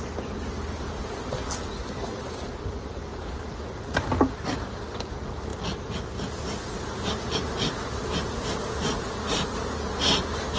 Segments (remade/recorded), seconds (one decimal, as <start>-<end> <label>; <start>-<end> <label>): 0.0-10.6 recorded